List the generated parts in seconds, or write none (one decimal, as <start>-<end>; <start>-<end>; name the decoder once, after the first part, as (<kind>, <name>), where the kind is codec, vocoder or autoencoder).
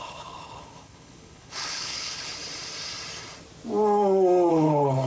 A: 0.0-2.4 (codec, HILCodec); 4.5-5.1